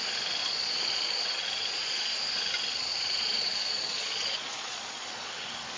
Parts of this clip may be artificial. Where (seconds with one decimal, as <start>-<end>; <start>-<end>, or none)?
0.4-2.2; 2.9-5.3